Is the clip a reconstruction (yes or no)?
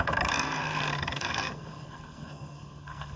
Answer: yes